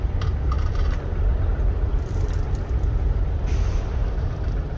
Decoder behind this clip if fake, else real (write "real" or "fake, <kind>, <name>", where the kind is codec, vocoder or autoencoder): fake, vocoder, BigVGAN v2